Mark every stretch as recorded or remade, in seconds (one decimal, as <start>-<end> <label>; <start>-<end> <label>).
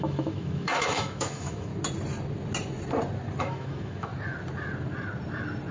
0.0-1.7 remade; 1.7-3.4 recorded; 3.4-4.1 remade; 4.1-5.7 recorded